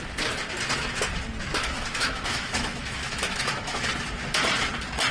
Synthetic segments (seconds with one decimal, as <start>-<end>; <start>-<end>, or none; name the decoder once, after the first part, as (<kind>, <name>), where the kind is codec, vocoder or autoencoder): 1.6-3.9 (autoencoder, DAC-VAE)